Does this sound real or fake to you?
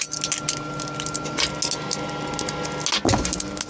real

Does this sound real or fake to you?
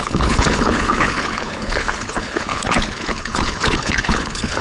fake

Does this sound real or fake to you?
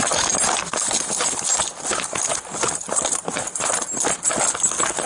real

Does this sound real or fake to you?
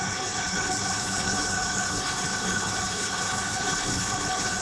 fake